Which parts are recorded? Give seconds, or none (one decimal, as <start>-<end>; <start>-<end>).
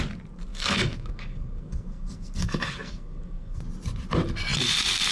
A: 0.0-0.5; 3.6-5.1